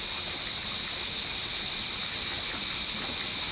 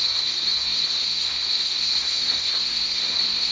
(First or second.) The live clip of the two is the first